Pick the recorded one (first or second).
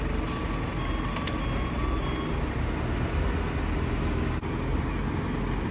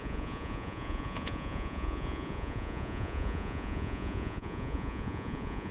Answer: first